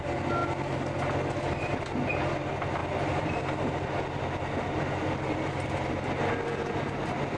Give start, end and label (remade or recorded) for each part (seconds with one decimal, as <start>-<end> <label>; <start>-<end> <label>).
0.0-7.4 recorded